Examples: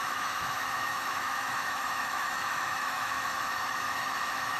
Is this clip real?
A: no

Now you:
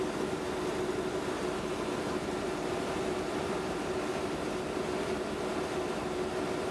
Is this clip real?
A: yes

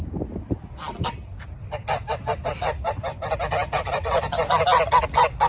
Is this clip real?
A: yes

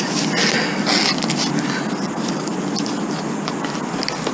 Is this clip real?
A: yes